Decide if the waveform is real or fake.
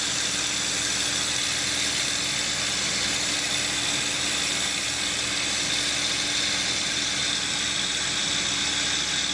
real